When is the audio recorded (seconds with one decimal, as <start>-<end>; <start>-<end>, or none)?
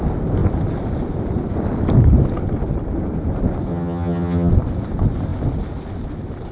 0.0-3.7; 4.5-6.5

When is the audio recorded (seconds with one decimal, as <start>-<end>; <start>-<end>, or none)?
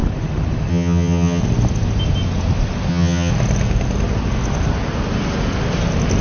0.0-0.7; 1.4-2.9; 3.3-6.2